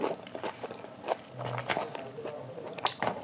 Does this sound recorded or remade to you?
recorded